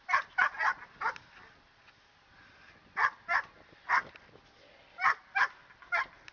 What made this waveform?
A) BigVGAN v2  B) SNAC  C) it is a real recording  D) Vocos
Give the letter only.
C